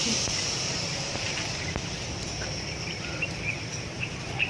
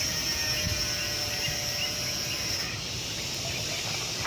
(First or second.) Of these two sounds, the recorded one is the second